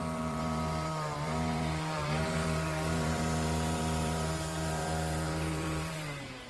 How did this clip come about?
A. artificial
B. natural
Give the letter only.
A